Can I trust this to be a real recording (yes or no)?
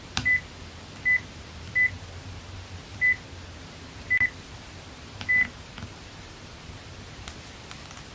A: yes